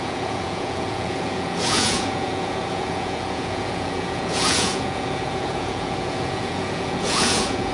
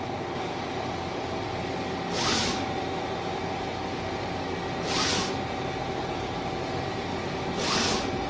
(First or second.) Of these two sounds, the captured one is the second